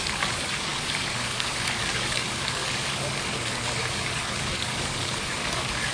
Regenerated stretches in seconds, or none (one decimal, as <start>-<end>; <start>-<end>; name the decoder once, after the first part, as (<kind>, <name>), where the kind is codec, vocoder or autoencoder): 0.0-5.9 (codec, DAC)